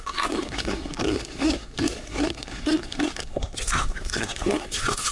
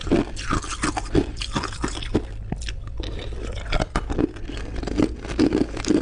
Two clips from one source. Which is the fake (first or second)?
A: first